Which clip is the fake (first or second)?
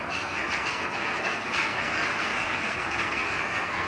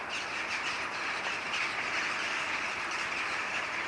first